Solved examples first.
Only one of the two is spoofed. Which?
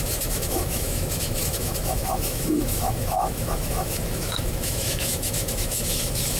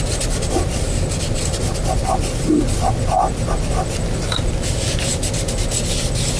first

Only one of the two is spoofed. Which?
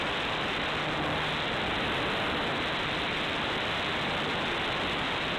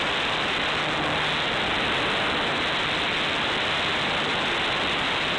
first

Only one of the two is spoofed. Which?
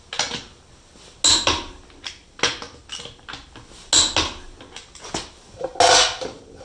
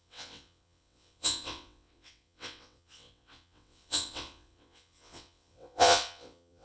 second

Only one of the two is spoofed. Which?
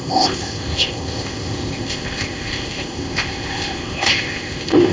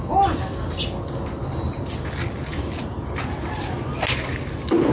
first